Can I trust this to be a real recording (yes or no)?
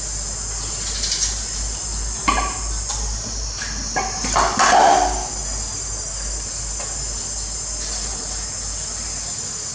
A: yes